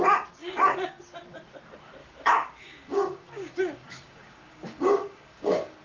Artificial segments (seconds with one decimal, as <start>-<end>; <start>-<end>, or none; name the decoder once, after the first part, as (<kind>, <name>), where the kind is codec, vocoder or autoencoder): 0.4-1.0 (codec, DAC); 2.0-5.8